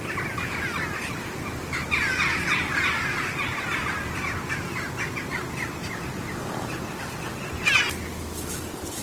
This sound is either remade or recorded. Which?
recorded